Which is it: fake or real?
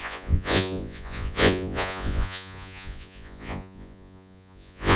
fake